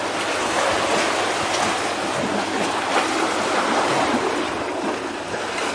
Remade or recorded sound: recorded